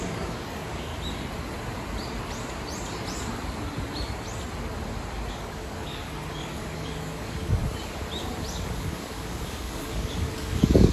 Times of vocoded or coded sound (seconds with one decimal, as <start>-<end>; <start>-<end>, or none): 0.0-0.9; 5.3-7.6; 8.5-10.9